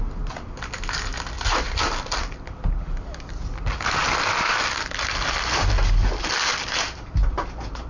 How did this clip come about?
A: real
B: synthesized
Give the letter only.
A